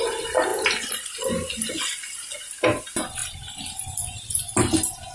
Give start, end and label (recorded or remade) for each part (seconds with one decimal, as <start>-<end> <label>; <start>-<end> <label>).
0.0-5.1 recorded